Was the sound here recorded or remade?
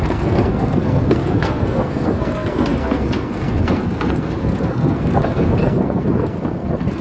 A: remade